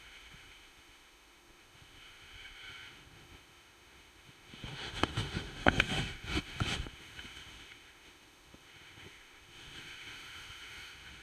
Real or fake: fake